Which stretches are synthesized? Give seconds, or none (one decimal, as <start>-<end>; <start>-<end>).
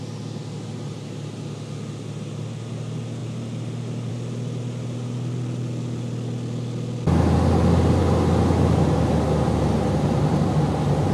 none